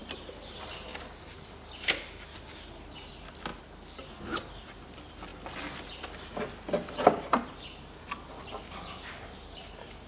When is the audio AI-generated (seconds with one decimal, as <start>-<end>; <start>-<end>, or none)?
none